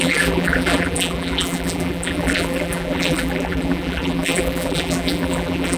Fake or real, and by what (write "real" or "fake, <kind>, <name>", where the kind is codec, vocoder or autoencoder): fake, vocoder, BigVGAN v2